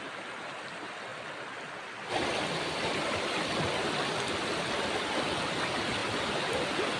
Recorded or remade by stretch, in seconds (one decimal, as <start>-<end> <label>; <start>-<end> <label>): 0.0-7.0 recorded